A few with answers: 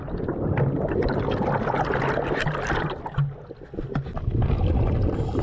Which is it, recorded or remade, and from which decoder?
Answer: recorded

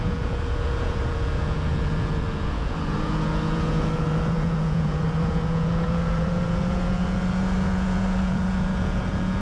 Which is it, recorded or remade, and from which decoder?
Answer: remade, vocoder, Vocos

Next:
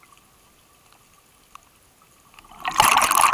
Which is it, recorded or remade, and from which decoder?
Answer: recorded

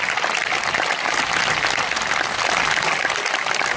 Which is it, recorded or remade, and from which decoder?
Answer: recorded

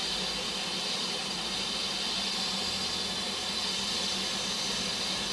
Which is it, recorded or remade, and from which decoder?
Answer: recorded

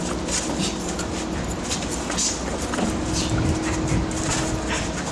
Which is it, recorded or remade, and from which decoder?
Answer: recorded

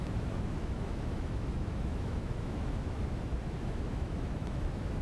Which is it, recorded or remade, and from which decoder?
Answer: remade, autoencoder, DAC-VAE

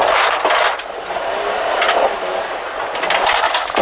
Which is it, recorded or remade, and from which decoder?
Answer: recorded